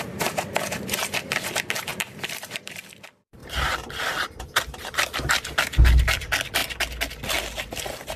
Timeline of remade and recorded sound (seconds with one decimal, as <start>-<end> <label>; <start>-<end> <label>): 0.0-1.9 recorded; 1.9-3.0 remade; 3.0-3.4 recorded; 3.4-4.4 remade; 4.4-8.2 recorded